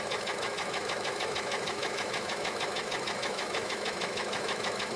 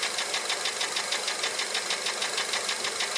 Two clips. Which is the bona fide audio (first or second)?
second